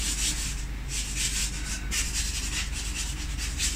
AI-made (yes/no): no